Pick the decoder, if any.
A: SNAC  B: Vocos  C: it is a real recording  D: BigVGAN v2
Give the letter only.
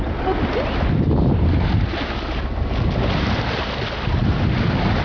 C